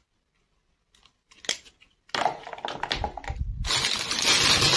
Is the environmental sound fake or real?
real